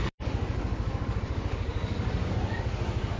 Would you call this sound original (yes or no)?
no